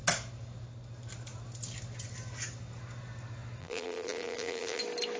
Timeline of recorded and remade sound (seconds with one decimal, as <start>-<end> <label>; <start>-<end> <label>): 0.0-3.6 recorded; 3.6-4.8 remade; 4.8-5.2 recorded

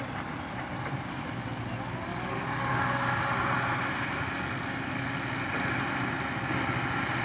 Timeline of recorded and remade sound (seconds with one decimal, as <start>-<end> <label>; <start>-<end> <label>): 0.0-2.1 recorded; 2.1-2.7 remade; 2.7-7.2 recorded

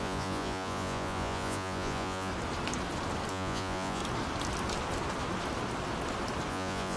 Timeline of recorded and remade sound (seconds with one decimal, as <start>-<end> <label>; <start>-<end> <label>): 0.0-2.3 remade; 2.3-3.3 recorded; 3.3-4.0 remade; 4.0-6.5 recorded; 6.5-7.0 remade

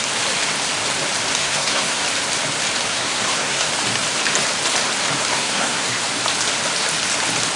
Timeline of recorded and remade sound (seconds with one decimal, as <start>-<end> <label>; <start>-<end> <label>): 0.0-1.4 recorded; 1.4-2.0 remade; 2.0-2.9 recorded; 2.9-3.7 remade; 3.7-5.3 recorded; 5.3-6.0 remade; 6.0-7.6 recorded

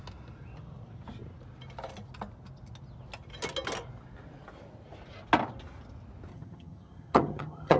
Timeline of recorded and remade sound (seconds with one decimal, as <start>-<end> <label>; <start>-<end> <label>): 0.0-6.3 recorded; 6.3-7.8 remade

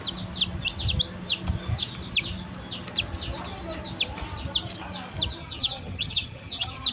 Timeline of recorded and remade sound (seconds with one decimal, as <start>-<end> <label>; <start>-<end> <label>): 0.0-5.4 recorded; 5.4-6.9 remade

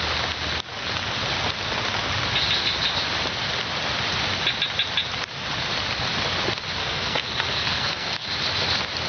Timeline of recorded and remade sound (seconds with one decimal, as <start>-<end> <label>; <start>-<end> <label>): 0.0-6.8 recorded; 6.8-8.3 remade; 8.3-9.1 recorded